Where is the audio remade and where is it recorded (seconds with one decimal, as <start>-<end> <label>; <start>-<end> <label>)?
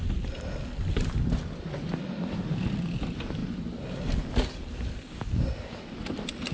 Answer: 0.0-6.5 recorded